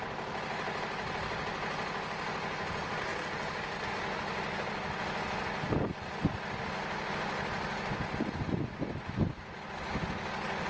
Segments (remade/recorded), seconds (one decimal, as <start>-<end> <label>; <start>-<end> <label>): 0.0-10.7 recorded